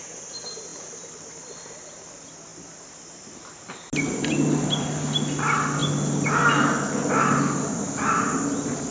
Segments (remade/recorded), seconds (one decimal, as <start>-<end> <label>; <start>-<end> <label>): 0.0-8.9 recorded